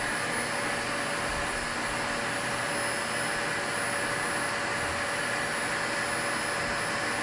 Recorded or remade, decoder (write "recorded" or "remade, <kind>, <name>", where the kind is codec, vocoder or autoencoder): recorded